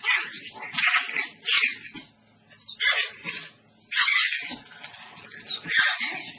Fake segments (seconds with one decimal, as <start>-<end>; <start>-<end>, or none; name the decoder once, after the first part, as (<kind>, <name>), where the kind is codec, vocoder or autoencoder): none